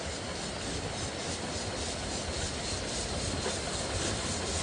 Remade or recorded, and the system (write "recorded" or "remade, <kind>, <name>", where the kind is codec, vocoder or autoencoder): recorded